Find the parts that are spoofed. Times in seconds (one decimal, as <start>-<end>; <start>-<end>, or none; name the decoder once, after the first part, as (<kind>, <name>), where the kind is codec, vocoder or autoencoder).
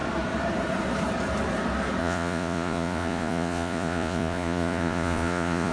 2.0-5.7 (vocoder, Vocos)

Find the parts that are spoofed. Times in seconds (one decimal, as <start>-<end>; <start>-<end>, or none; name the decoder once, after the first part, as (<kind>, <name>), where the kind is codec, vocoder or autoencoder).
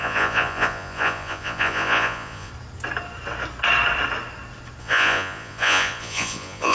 0.0-2.5 (vocoder, Vocos); 4.8-6.7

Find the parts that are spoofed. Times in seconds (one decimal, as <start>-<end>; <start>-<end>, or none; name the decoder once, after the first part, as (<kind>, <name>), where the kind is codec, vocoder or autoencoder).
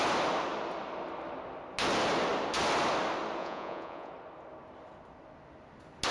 3.4-4.1 (vocoder, Vocos)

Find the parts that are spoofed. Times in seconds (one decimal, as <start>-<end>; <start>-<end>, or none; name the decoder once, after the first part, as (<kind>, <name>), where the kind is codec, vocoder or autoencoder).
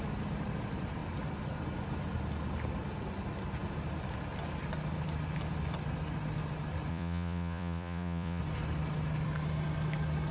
6.9-8.4 (vocoder, Vocos)